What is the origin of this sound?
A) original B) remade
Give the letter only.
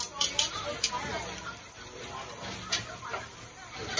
A